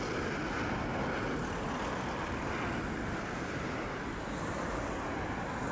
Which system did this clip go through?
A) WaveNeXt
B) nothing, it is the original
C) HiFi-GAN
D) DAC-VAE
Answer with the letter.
B